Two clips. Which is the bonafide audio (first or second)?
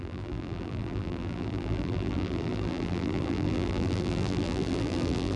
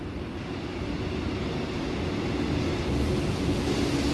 second